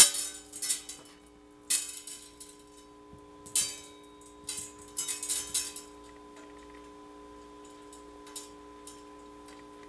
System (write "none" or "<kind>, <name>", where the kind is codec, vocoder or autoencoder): none